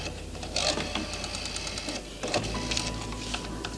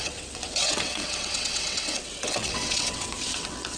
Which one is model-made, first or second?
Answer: second